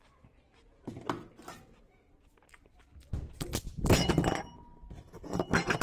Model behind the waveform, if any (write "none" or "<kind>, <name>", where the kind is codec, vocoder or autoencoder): none